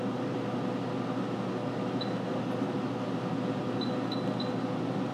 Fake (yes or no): no